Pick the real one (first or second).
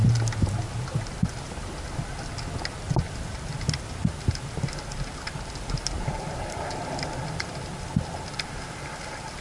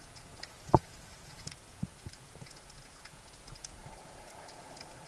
first